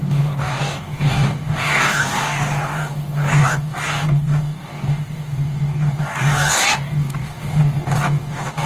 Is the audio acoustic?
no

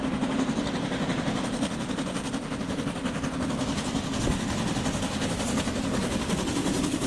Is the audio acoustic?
yes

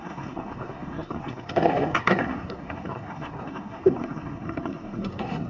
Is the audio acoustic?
no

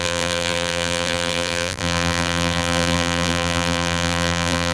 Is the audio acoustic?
no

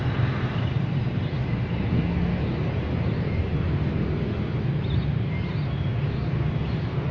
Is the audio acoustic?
yes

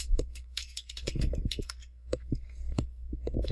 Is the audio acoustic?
no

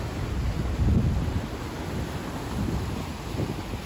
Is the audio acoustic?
yes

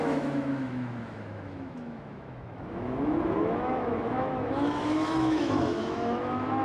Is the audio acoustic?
no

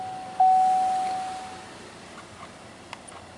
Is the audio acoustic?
yes